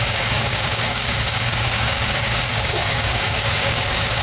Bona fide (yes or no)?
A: no